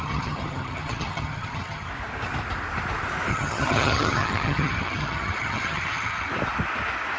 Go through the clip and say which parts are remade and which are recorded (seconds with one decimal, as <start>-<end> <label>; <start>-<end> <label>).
0.0-1.9 remade; 1.9-3.3 recorded; 3.3-6.3 remade; 6.3-7.2 recorded